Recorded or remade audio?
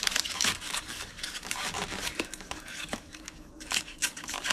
remade